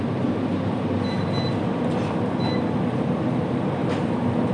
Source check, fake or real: real